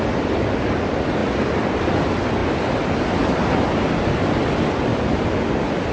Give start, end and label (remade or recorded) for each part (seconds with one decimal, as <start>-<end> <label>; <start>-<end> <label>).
0.0-5.9 recorded